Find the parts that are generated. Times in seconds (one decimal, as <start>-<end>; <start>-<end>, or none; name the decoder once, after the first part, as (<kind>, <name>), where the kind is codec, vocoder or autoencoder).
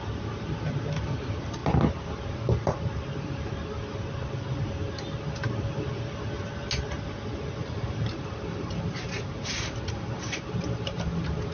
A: 7.6-11.5 (vocoder, BigVGAN v2)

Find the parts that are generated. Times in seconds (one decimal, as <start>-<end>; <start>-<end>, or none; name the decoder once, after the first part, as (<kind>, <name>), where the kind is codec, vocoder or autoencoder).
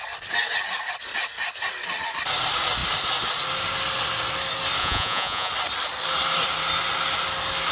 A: 4.8-5.5 (vocoder, Vocos)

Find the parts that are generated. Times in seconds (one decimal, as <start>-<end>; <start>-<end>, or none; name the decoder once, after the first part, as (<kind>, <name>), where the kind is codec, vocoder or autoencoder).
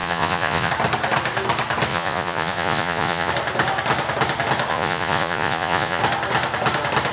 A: 0.0-0.7 (vocoder, Vocos); 1.9-3.3; 4.7-6.0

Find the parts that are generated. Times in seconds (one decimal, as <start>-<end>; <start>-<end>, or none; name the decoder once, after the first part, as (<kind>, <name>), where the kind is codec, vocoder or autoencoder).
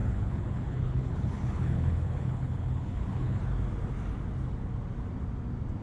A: 0.0-3.4 (codec, HILCodec)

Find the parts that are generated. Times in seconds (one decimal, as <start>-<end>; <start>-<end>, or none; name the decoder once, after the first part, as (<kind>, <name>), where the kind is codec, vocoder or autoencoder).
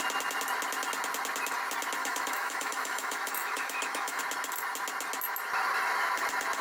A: 2.0-4.2 (autoencoder, DAC-VAE)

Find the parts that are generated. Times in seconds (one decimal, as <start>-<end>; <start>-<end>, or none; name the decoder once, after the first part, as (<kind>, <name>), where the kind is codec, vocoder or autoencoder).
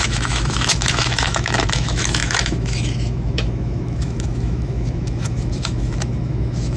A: 0.0-6.8 (autoencoder, DAC-VAE)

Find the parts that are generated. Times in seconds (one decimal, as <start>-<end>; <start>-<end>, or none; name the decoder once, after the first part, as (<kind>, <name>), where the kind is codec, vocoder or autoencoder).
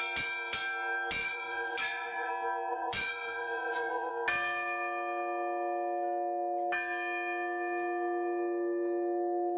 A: 1.2-2.3 (vocoder, Vocos); 2.7-4.1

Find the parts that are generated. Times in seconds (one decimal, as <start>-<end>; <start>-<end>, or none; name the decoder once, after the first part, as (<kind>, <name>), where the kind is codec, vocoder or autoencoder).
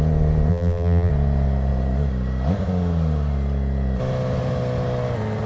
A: 0.5-1.1 (vocoder, BigVGAN v2)